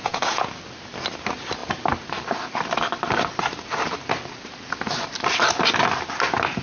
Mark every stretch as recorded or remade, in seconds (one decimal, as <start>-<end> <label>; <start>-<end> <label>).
0.0-0.5 remade; 0.5-6.6 recorded